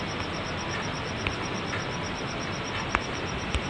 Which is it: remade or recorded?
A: recorded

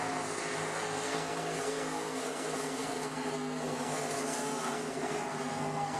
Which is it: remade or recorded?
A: remade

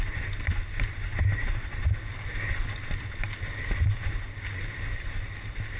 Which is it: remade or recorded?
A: recorded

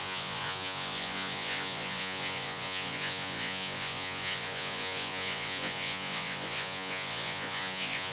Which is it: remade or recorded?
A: remade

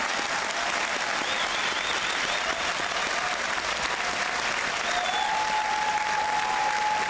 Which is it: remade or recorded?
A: recorded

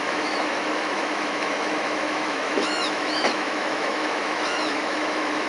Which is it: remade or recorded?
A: remade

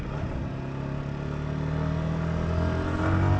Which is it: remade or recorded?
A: recorded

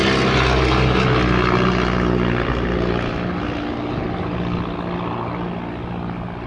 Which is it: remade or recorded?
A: recorded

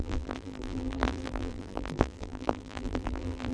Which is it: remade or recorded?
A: remade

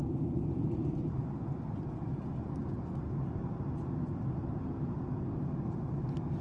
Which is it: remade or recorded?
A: recorded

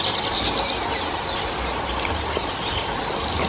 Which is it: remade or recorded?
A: recorded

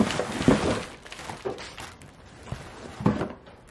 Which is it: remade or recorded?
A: recorded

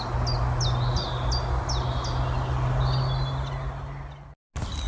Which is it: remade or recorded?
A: recorded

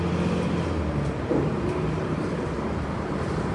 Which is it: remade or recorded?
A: recorded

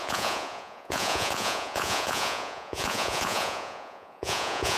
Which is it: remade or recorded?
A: remade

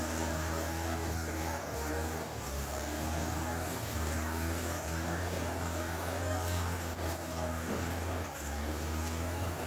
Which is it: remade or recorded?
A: remade